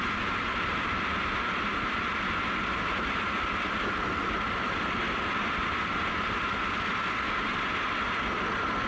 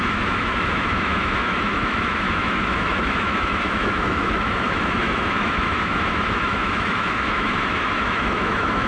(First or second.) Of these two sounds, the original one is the first